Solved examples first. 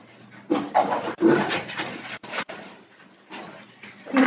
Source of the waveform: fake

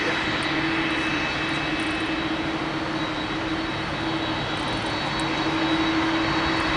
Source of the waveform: real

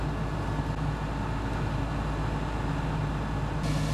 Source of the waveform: real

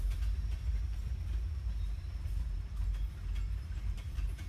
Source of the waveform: fake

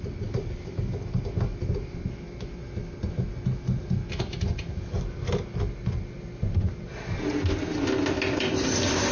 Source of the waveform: real